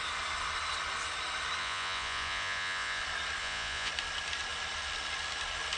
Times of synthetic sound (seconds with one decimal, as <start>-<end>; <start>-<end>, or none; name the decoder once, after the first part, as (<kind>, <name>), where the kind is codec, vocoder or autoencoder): 1.6-3.0 (vocoder, Vocos); 3.4-3.9

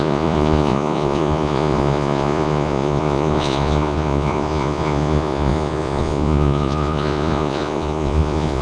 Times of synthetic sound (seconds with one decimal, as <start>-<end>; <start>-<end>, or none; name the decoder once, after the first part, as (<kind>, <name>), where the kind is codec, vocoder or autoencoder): 0.0-8.6 (vocoder, Vocos)